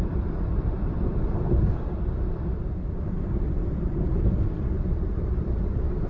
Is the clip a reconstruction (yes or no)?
yes